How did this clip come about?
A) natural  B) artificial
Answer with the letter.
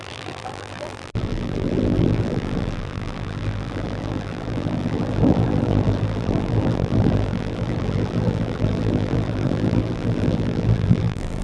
B